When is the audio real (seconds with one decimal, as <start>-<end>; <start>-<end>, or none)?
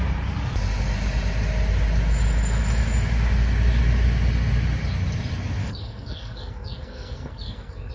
0.0-5.6